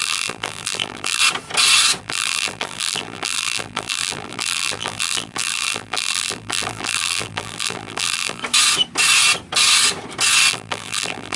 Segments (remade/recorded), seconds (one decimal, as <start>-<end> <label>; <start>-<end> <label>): 0.0-1.2 remade; 1.2-2.0 recorded; 2.0-8.4 remade; 8.4-10.5 recorded; 10.5-11.4 remade